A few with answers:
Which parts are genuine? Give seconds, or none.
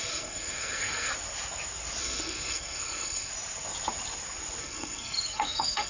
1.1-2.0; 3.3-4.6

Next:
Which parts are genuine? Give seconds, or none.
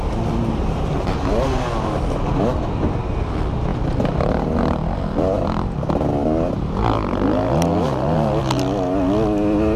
0.0-0.4; 1.2-9.8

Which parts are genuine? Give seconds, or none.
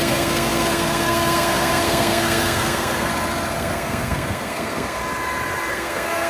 3.1-3.6; 5.0-5.7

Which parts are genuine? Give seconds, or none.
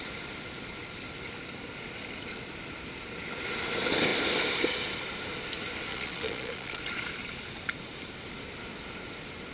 0.0-5.9; 6.8-9.5